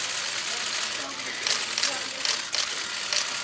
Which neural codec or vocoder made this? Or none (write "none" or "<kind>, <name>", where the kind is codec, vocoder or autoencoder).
none